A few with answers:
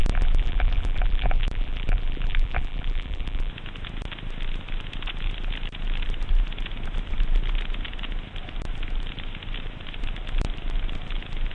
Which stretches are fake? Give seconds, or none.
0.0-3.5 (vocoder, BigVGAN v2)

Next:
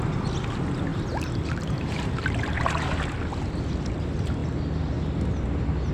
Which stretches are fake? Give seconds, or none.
none